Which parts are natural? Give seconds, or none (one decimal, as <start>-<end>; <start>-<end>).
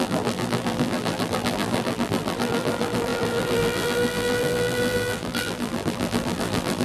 none